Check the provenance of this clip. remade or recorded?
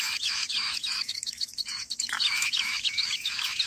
remade